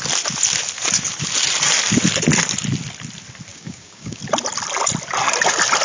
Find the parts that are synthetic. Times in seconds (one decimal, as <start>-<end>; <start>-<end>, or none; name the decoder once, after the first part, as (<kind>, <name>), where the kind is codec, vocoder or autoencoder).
3.5-4.2 (codec, DAC)